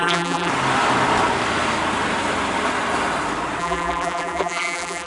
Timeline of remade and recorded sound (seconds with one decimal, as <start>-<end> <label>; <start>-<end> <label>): 0.0-0.5 remade; 0.5-3.6 recorded; 3.6-5.1 remade